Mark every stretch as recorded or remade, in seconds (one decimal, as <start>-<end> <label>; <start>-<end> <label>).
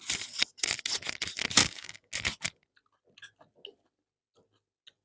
0.0-1.6 recorded; 1.6-2.1 remade; 2.1-5.0 recorded